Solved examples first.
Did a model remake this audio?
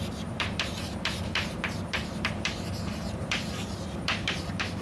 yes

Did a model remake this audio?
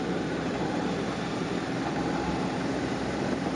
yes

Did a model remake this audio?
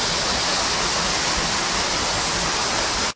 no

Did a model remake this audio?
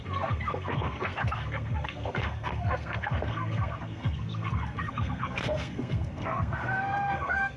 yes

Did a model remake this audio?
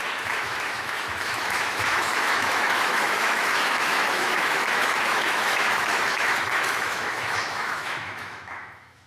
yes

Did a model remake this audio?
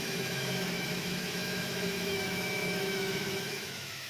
yes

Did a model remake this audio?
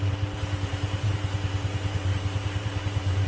yes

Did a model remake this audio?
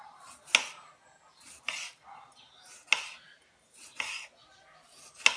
no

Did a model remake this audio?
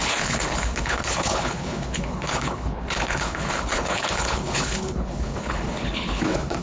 yes